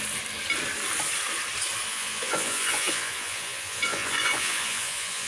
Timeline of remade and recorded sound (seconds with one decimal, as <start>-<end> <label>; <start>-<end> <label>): 0.0-1.9 recorded; 1.9-5.3 remade